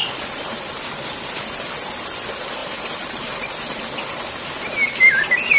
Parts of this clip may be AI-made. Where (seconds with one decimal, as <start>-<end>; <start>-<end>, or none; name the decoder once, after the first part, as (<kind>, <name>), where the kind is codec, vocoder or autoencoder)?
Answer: 2.6-3.8 (vocoder, BigVGAN v2)